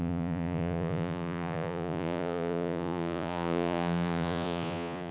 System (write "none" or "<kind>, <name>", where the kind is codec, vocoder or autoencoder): vocoder, Vocos